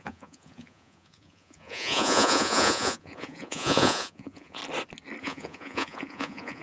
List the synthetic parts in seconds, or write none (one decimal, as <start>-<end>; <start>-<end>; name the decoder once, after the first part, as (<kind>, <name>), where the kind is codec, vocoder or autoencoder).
0.0-4.6 (vocoder, Vocos); 5.2-6.6